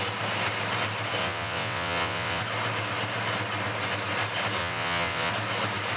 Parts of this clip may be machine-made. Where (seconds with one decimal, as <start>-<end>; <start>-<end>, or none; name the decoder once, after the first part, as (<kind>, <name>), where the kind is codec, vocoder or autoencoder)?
1.2-2.4 (vocoder, WaveNeXt); 4.6-5.3